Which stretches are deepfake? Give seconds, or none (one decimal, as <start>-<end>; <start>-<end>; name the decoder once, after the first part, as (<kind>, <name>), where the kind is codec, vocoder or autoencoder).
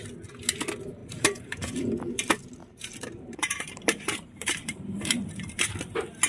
1.0-1.9 (vocoder, BigVGAN v2); 2.6-5.7